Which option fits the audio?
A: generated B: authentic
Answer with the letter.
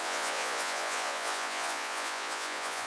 A